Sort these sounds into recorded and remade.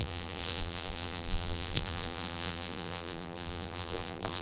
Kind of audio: remade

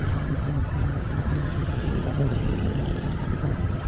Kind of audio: remade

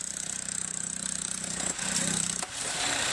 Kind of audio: remade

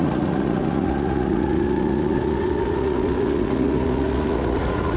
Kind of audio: remade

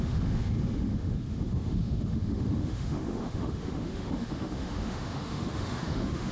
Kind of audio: remade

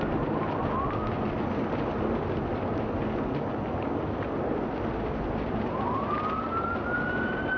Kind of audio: recorded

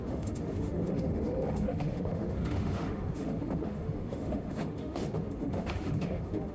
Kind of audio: remade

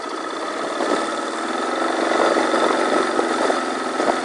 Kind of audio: recorded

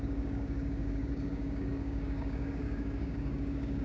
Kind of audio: remade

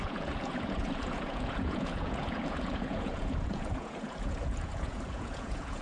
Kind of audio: remade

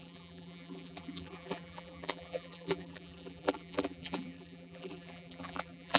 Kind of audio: remade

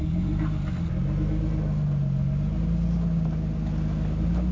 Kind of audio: recorded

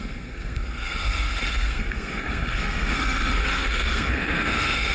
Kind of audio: remade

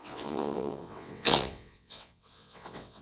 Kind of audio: remade